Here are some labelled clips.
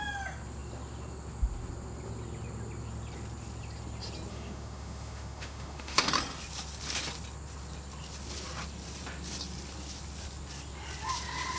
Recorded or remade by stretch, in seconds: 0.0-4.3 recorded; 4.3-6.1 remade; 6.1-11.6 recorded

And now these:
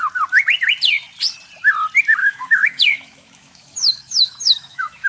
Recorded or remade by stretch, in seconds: 0.0-2.2 recorded; 2.2-5.1 remade

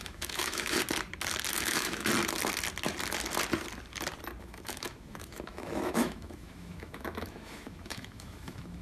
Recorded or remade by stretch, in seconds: 0.0-0.8 remade; 0.8-1.5 recorded; 1.5-2.1 remade; 2.1-4.4 recorded; 4.4-8.8 remade